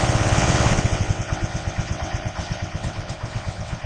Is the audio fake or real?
fake